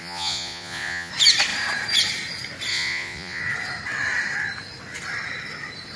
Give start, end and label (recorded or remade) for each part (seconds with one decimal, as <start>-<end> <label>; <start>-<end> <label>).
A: 0.0-1.1 remade; 1.1-2.7 recorded; 2.7-3.4 remade; 3.4-6.0 recorded